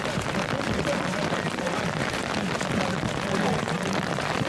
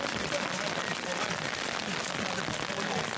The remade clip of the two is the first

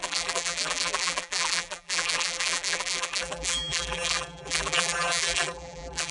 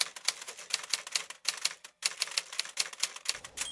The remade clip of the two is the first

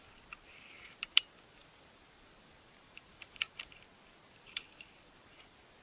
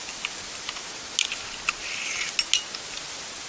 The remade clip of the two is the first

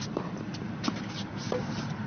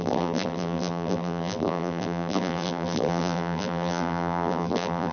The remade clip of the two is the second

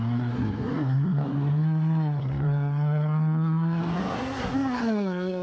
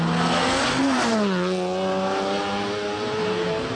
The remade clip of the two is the first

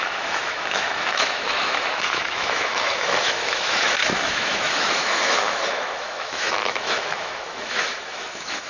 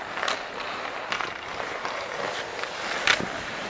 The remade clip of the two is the first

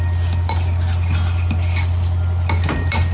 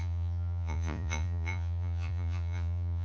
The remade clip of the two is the second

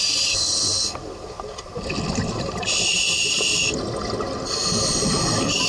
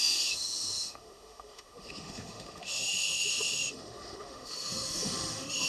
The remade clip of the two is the second